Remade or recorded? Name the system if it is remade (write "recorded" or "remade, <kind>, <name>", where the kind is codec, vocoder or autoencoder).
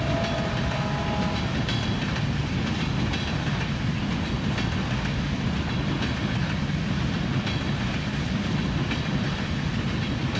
recorded